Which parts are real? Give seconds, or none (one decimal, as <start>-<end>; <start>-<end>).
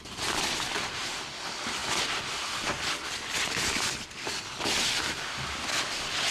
0.0-6.3